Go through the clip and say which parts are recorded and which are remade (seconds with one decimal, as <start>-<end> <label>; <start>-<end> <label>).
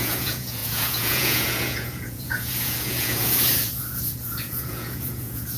0.0-5.6 remade